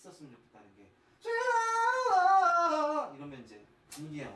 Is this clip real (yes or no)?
yes